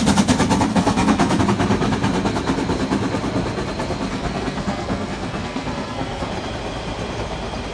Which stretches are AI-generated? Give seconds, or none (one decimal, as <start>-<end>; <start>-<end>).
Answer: 0.7-1.4; 4.1-6.3